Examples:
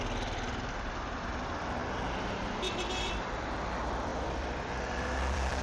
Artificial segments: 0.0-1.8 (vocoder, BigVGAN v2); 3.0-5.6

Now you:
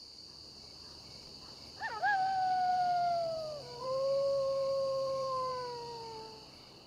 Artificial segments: 0.8-1.3 (vocoder, BigVGAN v2); 2.7-5.5

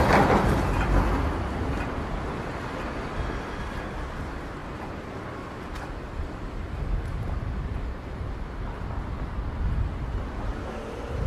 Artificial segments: 4.6-9.0 (vocoder, BigVGAN v2)

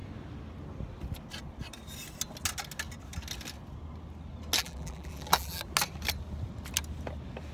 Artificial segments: 4.6-5.6 (vocoder, BigVGAN v2)

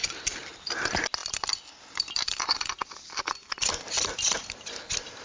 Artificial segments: 0.0-0.5 (vocoder, BigVGAN v2); 1.2-4.3